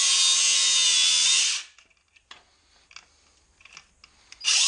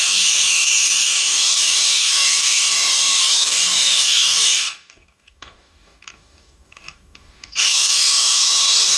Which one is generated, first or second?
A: second